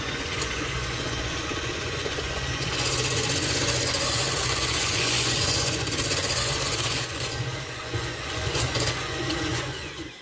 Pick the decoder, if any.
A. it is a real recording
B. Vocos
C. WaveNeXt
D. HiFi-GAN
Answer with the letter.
B